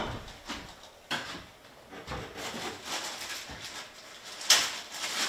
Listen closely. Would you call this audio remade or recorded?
recorded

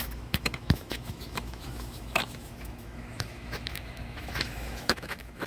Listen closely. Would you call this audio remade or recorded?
remade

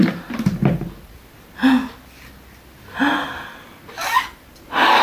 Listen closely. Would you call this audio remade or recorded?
recorded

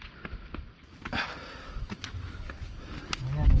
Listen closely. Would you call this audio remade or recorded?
recorded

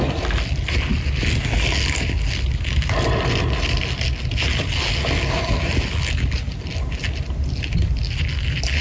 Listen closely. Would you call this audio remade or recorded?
recorded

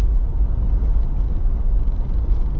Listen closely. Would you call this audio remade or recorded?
recorded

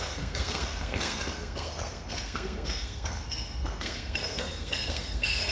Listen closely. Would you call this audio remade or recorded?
remade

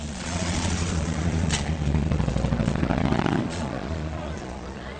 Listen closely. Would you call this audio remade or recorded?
remade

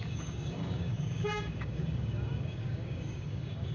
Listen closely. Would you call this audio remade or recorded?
remade